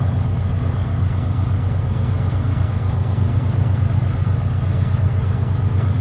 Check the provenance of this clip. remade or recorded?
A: remade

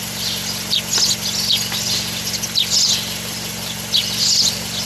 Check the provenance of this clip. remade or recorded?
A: recorded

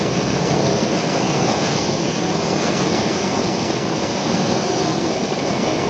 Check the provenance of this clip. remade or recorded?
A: remade